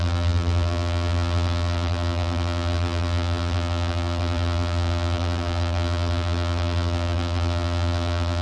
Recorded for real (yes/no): no